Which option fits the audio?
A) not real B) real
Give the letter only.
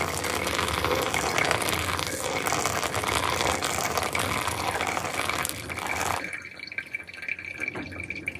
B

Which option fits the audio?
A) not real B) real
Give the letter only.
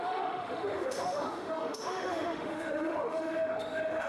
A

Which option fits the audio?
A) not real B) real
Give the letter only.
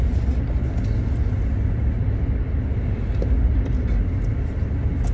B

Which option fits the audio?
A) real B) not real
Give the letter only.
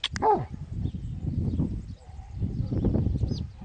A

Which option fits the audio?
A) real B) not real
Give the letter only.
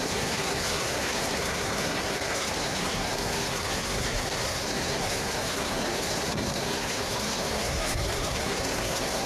B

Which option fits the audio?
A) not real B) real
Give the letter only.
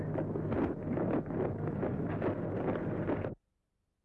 B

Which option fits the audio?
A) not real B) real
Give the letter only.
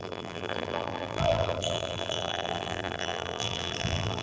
A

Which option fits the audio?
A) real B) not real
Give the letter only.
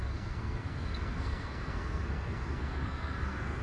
B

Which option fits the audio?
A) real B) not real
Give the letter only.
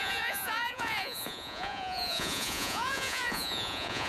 B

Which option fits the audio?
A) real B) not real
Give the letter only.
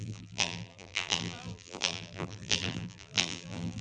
B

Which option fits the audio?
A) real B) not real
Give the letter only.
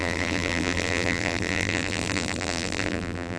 B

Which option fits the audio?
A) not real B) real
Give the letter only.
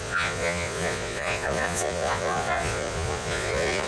A